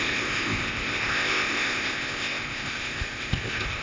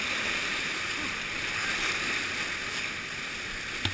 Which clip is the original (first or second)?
second